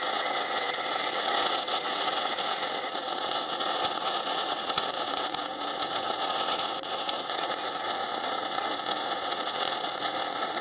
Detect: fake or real fake